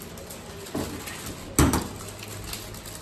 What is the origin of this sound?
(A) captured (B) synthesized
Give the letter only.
A